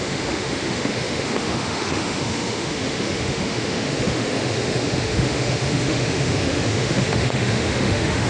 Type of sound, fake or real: fake